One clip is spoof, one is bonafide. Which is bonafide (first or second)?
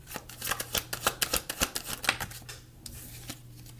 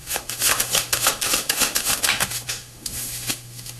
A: first